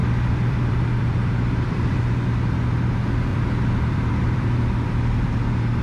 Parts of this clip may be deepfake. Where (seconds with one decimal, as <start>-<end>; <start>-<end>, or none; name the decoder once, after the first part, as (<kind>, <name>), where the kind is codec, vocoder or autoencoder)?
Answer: 0.0-2.3 (vocoder, BigVGAN v2); 3.3-5.3